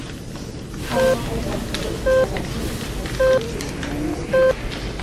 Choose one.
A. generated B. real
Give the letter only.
B